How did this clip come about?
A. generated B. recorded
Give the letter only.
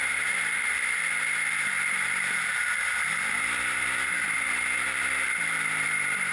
B